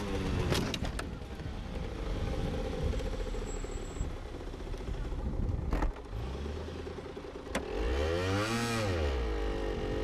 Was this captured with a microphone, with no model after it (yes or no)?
yes